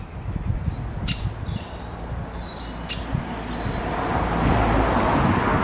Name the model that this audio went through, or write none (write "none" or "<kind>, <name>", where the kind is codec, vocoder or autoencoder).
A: none